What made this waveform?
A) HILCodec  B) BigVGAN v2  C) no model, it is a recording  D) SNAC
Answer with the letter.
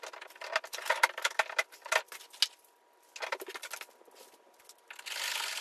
C